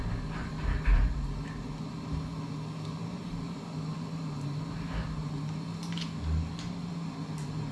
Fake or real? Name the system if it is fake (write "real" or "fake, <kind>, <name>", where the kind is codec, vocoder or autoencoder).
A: real